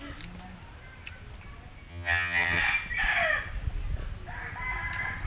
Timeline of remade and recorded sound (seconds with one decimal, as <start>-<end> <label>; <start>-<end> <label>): 0.0-1.9 recorded; 1.9-2.6 remade; 2.6-5.3 recorded